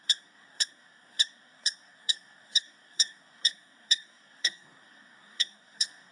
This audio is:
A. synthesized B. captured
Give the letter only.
A